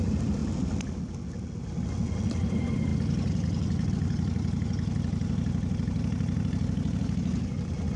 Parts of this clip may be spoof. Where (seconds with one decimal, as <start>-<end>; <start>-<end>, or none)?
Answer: none